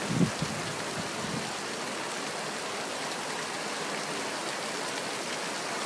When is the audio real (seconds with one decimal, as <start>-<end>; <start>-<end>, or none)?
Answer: 0.0-5.9